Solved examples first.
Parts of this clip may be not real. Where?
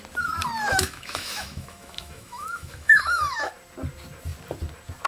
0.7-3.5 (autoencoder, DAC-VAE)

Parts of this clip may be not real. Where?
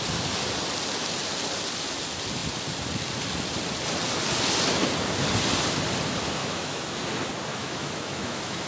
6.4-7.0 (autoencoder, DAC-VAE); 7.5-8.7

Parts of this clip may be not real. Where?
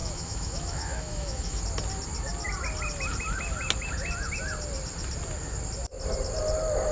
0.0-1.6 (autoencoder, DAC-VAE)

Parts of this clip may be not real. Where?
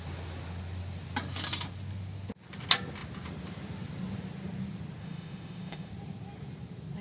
5.0-5.9 (autoencoder, DAC-VAE)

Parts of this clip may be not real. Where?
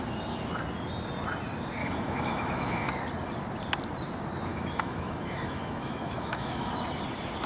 1.8-2.9 (autoencoder, DAC-VAE); 4.5-6.7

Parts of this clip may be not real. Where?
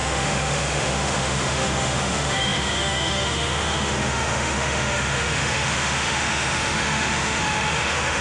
0.0-8.2 (autoencoder, DAC-VAE)